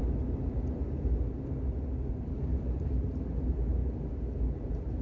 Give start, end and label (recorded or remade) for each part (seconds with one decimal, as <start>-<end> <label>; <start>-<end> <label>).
0.0-2.1 recorded; 2.1-5.0 remade